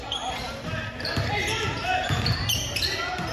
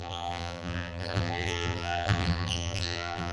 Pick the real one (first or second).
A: first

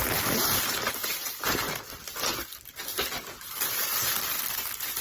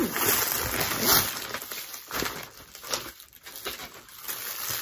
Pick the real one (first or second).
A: second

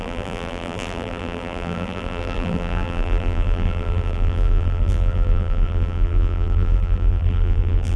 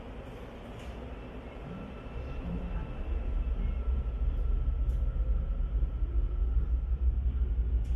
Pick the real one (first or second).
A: second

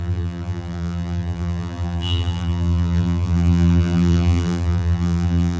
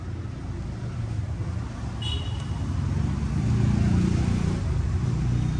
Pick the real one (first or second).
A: second